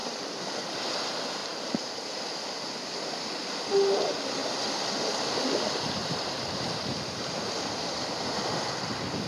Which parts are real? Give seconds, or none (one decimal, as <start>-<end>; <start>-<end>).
0.7-1.4; 2.7-4.4; 5.3-6.0; 8.1-9.3